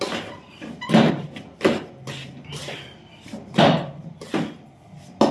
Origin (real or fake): real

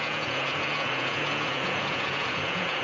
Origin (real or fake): fake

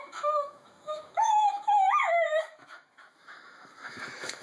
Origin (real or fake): fake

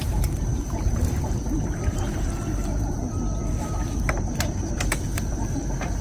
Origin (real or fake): fake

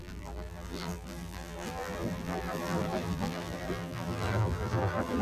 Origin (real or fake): fake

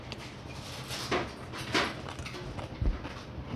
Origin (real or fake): real